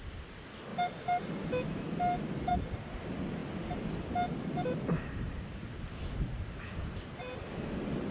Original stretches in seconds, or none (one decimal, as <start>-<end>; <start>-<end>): 0.0-8.1